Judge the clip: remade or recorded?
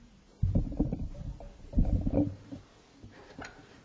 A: remade